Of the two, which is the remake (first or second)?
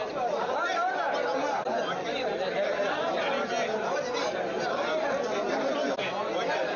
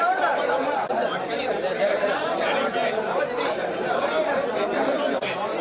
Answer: second